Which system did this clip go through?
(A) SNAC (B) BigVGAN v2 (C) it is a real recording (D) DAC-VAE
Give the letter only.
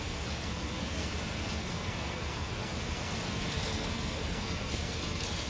A